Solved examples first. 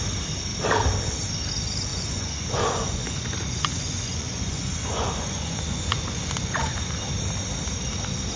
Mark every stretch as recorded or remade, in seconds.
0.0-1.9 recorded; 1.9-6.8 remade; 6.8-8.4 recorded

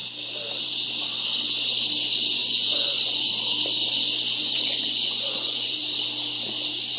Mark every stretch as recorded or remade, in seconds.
0.0-2.4 recorded; 2.4-3.3 remade; 3.3-4.4 recorded; 4.4-5.8 remade; 5.8-7.0 recorded

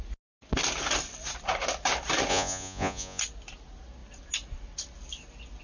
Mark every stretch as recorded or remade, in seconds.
0.0-2.3 recorded; 2.3-3.2 remade; 3.2-5.6 recorded

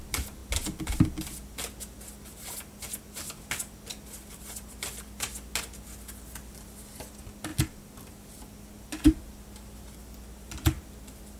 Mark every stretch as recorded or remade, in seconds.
0.0-11.4 recorded

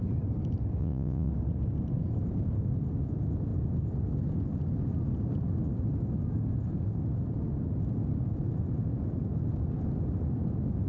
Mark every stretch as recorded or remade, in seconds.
0.0-0.8 recorded; 0.8-1.3 remade; 1.3-10.9 recorded

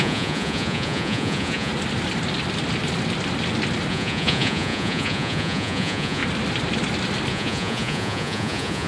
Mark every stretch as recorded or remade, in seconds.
0.0-1.7 remade; 1.7-3.9 recorded; 3.9-6.2 remade; 6.2-7.3 recorded; 7.3-8.9 remade

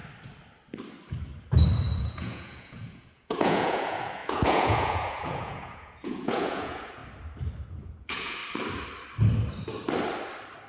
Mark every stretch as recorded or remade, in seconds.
0.0-2.0 recorded; 2.0-7.0 remade; 7.0-7.6 recorded; 7.6-8.4 remade; 8.4-10.7 recorded

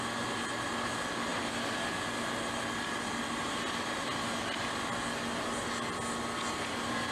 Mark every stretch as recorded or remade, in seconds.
0.0-7.1 recorded